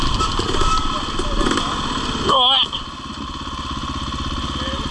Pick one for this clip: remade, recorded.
recorded